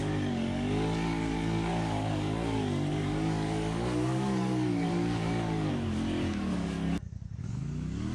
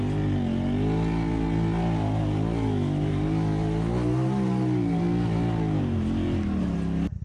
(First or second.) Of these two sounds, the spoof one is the first